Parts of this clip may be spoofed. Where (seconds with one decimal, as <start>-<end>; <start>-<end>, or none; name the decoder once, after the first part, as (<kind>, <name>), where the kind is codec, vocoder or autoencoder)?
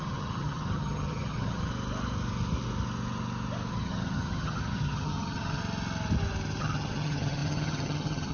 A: 0.0-1.7 (vocoder, HiFi-GAN); 3.7-5.6; 6.6-8.3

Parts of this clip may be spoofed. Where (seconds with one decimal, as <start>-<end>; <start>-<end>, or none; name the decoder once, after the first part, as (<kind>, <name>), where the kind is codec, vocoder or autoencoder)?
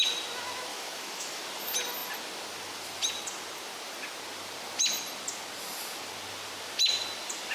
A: 0.7-1.4 (autoencoder, DAC-VAE)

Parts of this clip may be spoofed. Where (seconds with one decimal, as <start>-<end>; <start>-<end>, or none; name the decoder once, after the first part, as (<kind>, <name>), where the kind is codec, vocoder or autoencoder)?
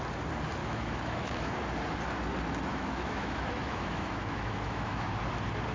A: 0.6-1.5 (autoencoder, DAC-VAE); 2.7-5.1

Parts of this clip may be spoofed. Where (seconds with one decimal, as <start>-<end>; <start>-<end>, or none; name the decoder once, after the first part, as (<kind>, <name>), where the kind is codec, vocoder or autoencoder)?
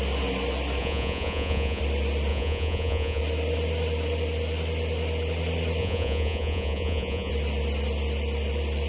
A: 0.8-1.8 (vocoder, Vocos); 2.3-3.2; 5.8-7.3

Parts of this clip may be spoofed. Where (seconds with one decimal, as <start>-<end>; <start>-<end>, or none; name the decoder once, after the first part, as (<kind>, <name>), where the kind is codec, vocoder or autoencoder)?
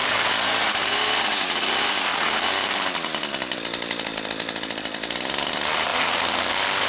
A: none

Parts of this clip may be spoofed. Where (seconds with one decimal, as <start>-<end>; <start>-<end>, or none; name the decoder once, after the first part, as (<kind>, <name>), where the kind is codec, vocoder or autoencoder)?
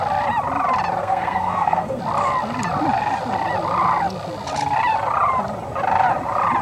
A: 1.0-2.0 (codec, SNAC)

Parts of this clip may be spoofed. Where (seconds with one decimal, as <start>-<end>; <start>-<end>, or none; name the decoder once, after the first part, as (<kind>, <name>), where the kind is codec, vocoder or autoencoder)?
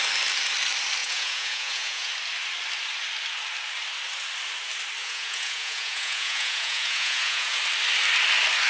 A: 1.0-2.1 (vocoder, Vocos); 5.0-7.6